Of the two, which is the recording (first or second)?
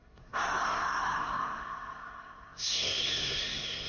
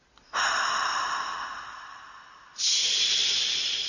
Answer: second